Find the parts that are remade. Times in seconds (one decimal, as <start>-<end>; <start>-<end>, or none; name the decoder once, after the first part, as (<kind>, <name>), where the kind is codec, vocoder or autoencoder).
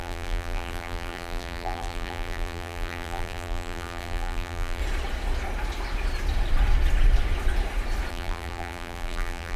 0.0-4.8 (vocoder, BigVGAN v2); 8.1-9.6